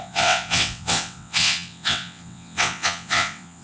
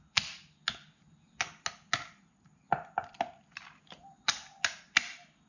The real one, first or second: second